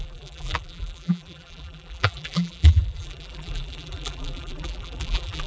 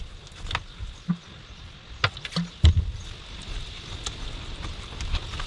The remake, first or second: first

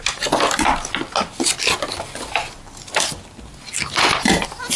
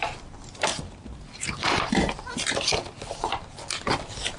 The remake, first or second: second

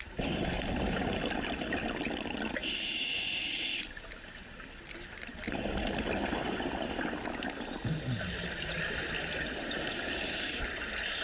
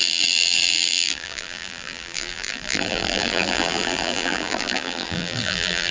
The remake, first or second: second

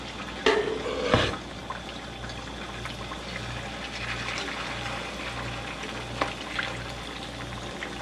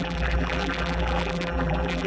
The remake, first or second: second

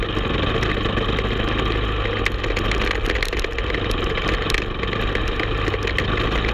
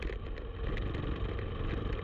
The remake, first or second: second